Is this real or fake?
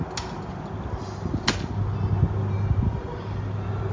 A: real